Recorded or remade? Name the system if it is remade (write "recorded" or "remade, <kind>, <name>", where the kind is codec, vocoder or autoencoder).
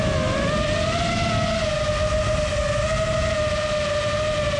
recorded